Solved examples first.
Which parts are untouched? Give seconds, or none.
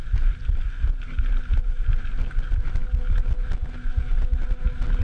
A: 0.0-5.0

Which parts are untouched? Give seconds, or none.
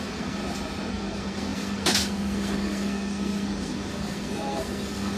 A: 0.4-0.9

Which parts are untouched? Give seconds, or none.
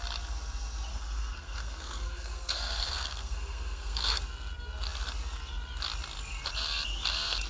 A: 0.0-0.9; 4.2-7.5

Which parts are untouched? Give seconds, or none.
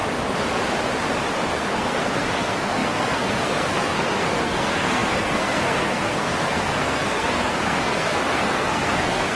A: 0.0-1.5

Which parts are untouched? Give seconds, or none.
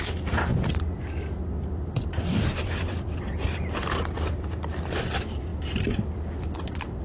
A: 0.0-7.0